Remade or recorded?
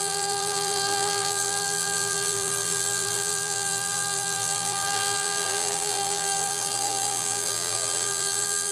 remade